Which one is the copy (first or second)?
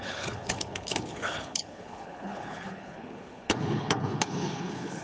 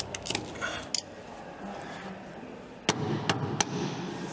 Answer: first